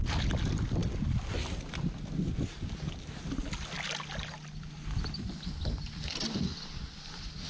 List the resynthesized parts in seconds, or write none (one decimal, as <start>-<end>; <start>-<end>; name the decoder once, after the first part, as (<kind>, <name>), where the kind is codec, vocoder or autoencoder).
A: none